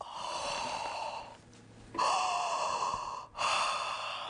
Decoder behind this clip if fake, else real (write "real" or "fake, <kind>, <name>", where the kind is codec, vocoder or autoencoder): real